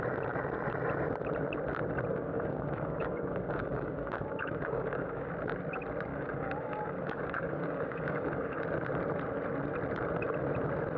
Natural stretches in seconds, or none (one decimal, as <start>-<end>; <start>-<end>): 0.0-2.1; 5.3-6.1; 8.6-11.0